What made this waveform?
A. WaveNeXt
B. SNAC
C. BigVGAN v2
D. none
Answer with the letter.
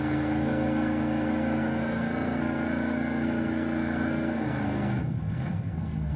B